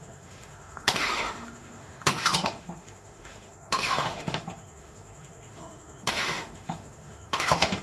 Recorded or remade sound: remade